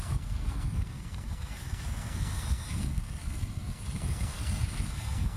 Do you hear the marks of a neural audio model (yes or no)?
yes